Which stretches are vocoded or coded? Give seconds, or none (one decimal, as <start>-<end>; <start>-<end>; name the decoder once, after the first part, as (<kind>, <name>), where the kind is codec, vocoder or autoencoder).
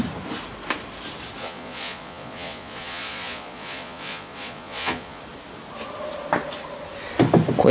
1.4-5.2 (vocoder, Vocos)